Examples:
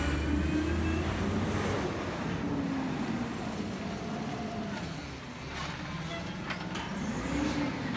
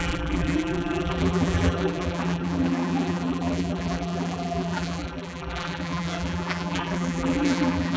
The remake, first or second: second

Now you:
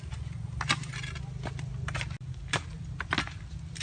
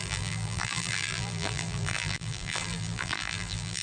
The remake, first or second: second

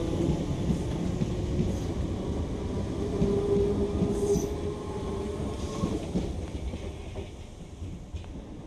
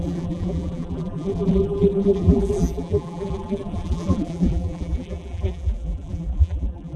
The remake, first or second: second